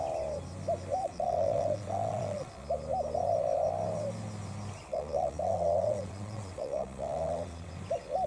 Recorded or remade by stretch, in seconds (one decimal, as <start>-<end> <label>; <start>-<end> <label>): 0.0-1.0 recorded; 1.0-2.5 remade; 2.5-4.9 recorded; 4.9-7.8 remade; 7.8-8.3 recorded